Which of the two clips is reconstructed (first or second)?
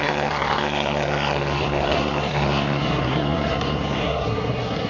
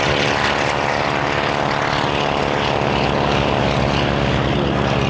first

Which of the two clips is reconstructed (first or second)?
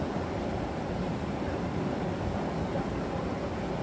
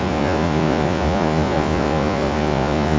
second